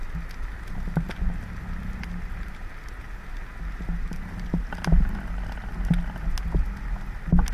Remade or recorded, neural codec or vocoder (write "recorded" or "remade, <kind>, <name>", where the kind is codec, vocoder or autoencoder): recorded